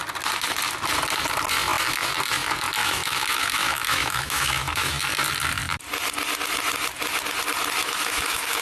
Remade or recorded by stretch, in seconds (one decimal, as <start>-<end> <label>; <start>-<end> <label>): 0.0-2.8 recorded; 2.8-5.0 remade; 5.0-7.8 recorded; 7.8-8.6 remade